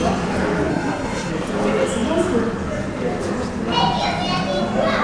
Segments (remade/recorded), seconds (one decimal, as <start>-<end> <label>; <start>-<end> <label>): 0.0-0.7 recorded; 0.7-1.3 remade; 1.3-5.0 recorded